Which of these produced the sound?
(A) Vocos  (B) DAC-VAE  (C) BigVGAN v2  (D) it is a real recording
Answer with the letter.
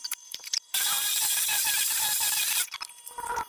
C